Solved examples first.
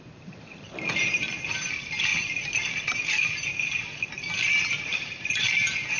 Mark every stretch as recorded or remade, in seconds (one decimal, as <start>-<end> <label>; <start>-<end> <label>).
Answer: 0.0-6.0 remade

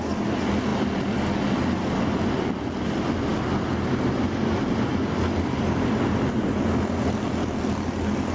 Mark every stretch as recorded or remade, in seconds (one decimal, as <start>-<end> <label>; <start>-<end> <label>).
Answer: 0.0-8.3 recorded

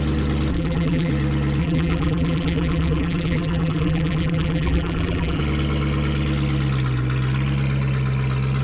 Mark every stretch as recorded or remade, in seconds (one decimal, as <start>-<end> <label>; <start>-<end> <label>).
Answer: 0.0-0.5 recorded; 0.5-1.1 remade; 1.1-1.6 recorded; 1.6-5.4 remade; 5.4-8.6 recorded

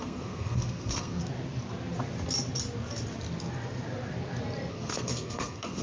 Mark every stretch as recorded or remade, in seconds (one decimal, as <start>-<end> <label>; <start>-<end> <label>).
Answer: 0.0-1.2 remade; 1.2-4.7 recorded; 4.7-5.8 remade

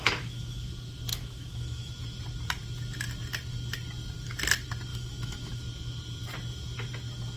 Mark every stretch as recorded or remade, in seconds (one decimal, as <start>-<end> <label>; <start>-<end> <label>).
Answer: 0.0-0.7 remade; 0.7-1.1 recorded; 1.1-1.9 remade; 1.9-4.9 recorded; 4.9-5.6 remade; 5.6-7.4 recorded